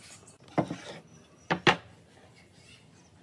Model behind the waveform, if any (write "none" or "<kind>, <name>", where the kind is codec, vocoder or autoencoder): none